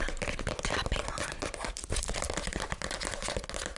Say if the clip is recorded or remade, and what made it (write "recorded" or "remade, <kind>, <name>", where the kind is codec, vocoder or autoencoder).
recorded